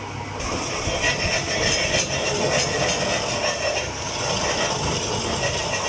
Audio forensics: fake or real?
real